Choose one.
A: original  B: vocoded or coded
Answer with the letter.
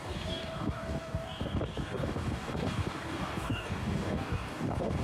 B